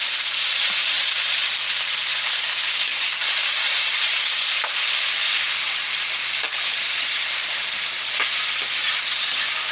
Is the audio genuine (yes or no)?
no